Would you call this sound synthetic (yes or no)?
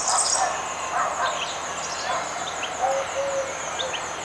no